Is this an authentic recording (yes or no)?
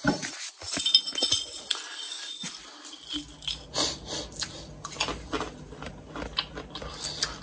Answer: yes